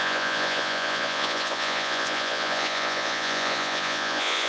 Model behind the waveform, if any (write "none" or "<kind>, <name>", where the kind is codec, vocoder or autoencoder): vocoder, Vocos